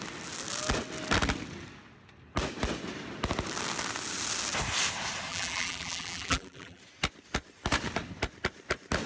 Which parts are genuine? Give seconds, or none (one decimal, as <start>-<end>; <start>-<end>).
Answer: 0.0-5.3; 6.8-9.1